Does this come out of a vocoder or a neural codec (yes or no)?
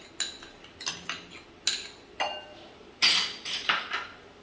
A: no